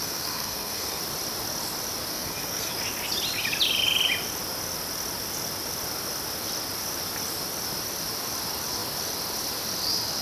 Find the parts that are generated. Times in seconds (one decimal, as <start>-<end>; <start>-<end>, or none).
0.0-1.0; 2.1-2.7